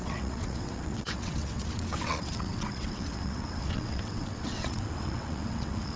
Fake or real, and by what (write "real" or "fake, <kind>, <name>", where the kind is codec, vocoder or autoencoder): fake, vocoder, WaveNeXt